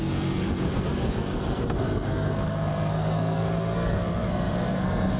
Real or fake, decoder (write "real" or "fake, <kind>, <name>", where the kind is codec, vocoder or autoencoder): fake, codec, SNAC